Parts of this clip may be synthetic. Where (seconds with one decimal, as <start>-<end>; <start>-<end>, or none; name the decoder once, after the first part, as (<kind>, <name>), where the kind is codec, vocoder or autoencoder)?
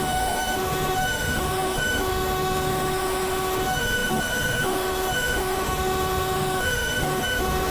0.0-7.7 (autoencoder, DAC-VAE)